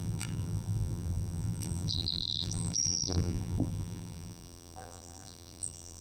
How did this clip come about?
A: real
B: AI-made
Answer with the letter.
B